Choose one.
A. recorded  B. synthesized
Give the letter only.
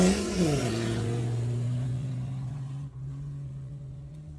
B